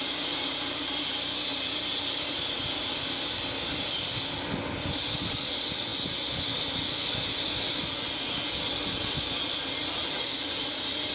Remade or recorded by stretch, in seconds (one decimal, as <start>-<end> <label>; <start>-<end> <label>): 0.0-11.1 recorded